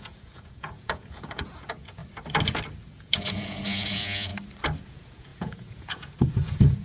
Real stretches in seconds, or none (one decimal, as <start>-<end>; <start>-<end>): 2.0-2.8; 4.3-4.8

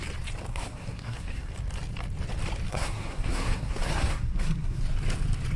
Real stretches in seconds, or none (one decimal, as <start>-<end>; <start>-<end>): 0.0-0.5; 1.5-2.7; 4.8-5.6

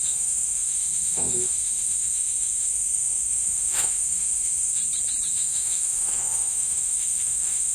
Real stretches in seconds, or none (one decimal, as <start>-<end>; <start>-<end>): 4.8-5.3

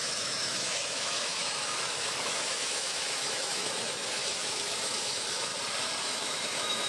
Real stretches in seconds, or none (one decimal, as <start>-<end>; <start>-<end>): 5.5-6.0